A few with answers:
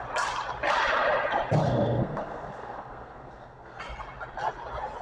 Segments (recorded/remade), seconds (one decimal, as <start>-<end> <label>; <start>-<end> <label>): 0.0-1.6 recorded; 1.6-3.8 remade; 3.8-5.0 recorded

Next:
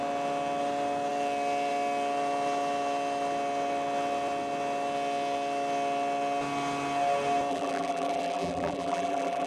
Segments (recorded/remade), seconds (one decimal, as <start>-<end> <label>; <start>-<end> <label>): 0.0-7.5 recorded; 7.5-9.5 remade

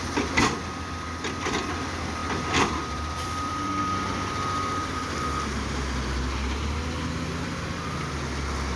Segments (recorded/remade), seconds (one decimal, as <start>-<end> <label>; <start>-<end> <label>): 0.0-2.2 recorded; 2.2-3.8 remade; 3.8-8.8 recorded